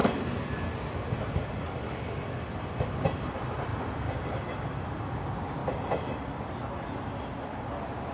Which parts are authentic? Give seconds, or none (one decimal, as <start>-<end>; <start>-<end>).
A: 0.0-8.1